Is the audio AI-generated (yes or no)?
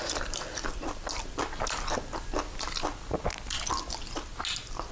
no